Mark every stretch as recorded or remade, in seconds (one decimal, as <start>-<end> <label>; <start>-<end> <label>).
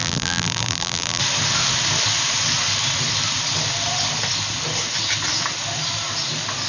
0.0-1.2 remade; 1.2-6.7 recorded